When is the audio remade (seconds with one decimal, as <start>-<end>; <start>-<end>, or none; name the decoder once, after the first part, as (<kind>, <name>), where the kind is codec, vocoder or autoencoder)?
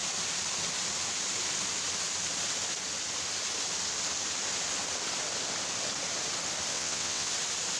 6.7-7.3 (vocoder, WaveNeXt)